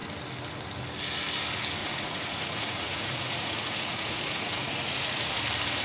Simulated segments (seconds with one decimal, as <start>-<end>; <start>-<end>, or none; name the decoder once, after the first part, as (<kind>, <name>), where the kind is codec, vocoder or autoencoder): 1.8-5.3 (vocoder, Vocos)